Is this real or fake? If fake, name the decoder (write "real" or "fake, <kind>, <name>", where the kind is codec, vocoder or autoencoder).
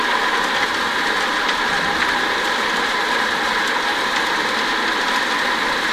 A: real